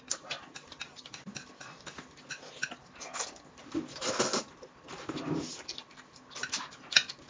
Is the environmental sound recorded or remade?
recorded